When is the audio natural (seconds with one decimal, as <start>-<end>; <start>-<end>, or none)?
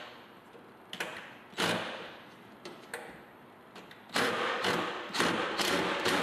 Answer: 0.0-6.2